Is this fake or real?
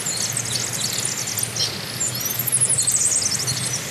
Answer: real